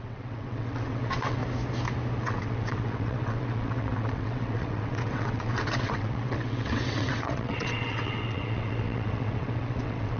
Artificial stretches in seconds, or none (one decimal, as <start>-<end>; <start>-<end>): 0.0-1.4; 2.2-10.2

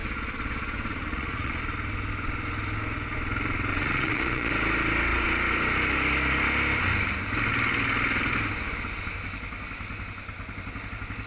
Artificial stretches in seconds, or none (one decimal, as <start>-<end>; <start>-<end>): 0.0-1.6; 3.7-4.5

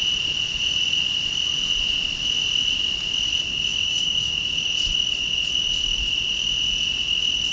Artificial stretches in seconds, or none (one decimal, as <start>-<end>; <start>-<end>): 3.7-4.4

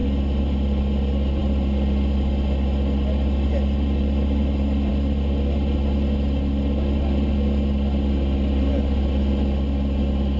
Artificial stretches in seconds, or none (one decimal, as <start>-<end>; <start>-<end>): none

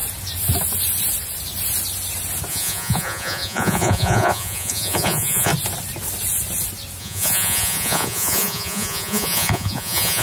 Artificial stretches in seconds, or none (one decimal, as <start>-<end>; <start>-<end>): 2.5-5.5; 7.0-10.2

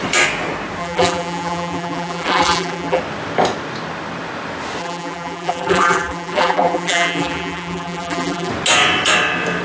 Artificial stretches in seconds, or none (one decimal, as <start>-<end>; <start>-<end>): 0.8-3.0; 4.8-8.5

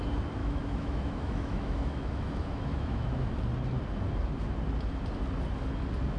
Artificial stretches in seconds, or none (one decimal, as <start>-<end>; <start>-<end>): 0.4-3.3